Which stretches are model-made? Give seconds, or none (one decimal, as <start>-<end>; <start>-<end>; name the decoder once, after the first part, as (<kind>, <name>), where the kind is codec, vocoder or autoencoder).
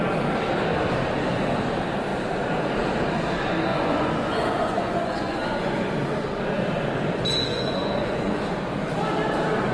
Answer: 3.7-5.9 (vocoder, Vocos); 7.5-8.4